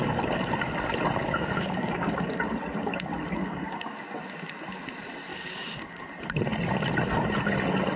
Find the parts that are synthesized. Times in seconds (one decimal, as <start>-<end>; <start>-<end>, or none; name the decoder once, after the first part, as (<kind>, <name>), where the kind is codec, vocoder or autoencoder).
1.2-2.4 (codec, DAC); 3.4-4.0; 5.3-6.0